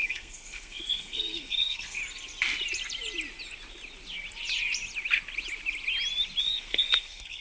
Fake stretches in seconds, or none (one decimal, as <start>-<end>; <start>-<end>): 0.0-2.0; 6.4-7.4